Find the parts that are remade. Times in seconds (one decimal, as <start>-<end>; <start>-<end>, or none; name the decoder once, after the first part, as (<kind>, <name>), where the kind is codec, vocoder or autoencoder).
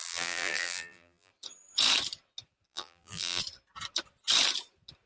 0.0-1.3 (vocoder, BigVGAN v2); 2.7-3.4